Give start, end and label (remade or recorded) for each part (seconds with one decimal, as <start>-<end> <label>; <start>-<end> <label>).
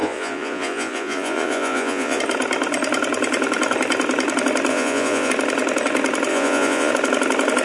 0.0-2.2 remade; 2.2-4.7 recorded; 4.7-5.3 remade; 5.3-6.3 recorded; 6.3-6.9 remade; 6.9-7.6 recorded